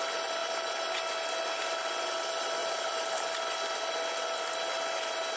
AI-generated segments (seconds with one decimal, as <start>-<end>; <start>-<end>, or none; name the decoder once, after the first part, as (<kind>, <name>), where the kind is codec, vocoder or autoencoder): 2.6-3.2 (vocoder, BigVGAN v2)